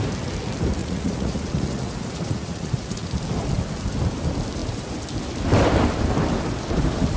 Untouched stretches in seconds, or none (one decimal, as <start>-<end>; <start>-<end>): 0.0-0.8; 3.1-7.2